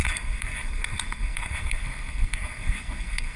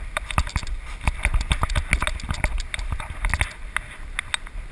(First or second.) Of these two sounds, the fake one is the first